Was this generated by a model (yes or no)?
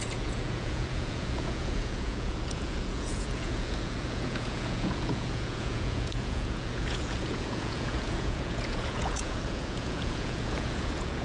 yes